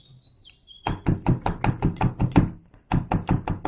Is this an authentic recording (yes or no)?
yes